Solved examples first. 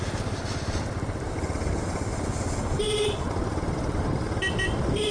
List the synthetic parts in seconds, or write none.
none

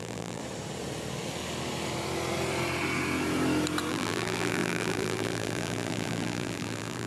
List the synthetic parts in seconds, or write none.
0.0-0.4 (vocoder, BigVGAN v2); 3.9-7.1